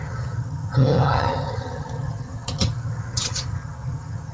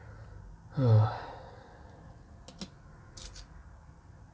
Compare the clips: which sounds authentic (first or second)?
second